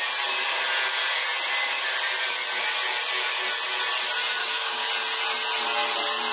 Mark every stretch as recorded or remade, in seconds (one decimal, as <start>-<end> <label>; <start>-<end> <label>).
0.0-4.4 recorded; 4.4-4.9 remade; 4.9-6.3 recorded